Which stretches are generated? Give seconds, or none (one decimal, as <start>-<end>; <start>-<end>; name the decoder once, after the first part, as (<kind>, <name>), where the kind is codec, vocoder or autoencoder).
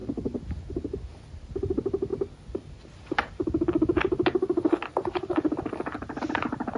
none